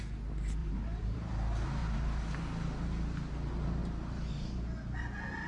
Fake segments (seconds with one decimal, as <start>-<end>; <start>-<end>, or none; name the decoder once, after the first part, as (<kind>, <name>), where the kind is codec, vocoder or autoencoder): 0.6-1.3 (vocoder, BigVGAN v2); 1.8-2.3; 3.8-4.3